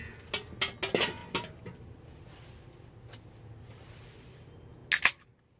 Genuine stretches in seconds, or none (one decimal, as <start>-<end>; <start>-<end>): 0.0-5.6